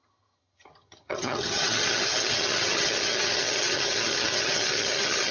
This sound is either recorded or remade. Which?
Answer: remade